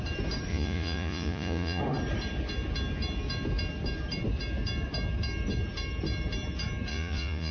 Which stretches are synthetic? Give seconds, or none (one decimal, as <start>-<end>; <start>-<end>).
0.5-1.8; 6.9-7.5